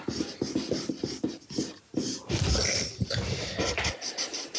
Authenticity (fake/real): fake